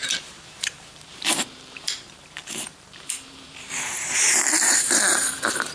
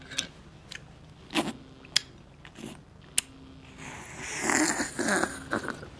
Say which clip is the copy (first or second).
first